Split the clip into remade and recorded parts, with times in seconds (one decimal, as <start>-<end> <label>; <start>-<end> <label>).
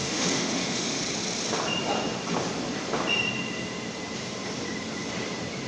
0.0-1.0 remade; 1.0-5.7 recorded